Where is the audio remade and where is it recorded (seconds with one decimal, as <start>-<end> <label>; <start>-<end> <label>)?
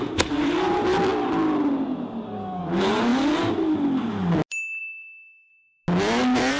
0.0-4.8 recorded; 4.8-5.5 remade; 5.5-6.6 recorded